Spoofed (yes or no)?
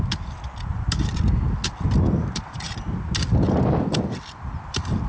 no